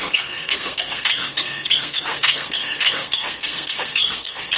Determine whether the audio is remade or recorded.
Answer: remade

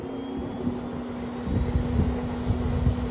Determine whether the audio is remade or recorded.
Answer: recorded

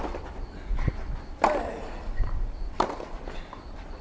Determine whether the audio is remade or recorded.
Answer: recorded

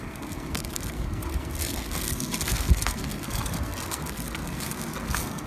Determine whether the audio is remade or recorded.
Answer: remade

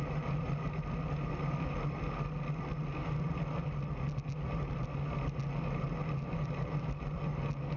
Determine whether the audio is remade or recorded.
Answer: recorded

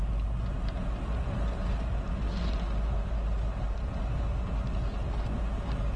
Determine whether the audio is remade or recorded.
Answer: recorded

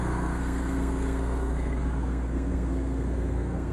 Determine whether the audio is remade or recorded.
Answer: remade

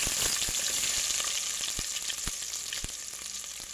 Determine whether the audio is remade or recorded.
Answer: recorded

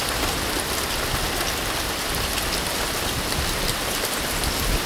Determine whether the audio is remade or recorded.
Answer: recorded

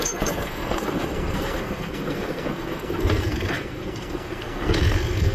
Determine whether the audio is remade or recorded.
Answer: remade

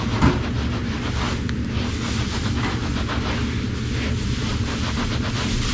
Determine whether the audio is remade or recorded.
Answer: recorded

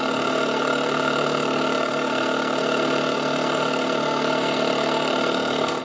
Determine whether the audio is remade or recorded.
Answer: remade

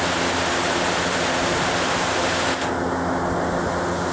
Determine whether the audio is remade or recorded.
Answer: recorded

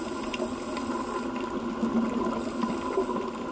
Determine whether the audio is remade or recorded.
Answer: recorded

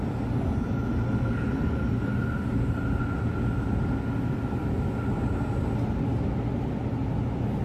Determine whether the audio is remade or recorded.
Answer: recorded